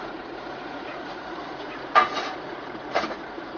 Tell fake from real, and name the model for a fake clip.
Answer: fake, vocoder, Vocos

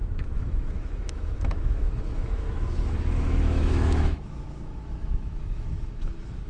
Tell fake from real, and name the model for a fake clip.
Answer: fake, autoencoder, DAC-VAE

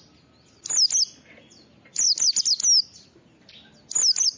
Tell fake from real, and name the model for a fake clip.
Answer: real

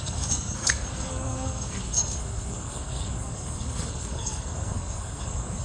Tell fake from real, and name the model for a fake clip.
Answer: fake, codec, SNAC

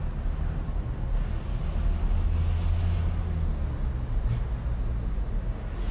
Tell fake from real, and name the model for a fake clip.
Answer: real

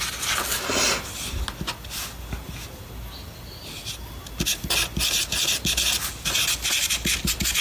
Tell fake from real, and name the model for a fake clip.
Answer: real